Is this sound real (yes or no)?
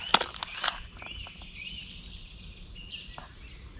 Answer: yes